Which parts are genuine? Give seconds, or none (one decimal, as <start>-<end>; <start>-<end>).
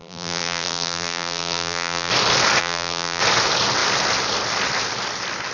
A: 2.1-2.6; 3.2-5.5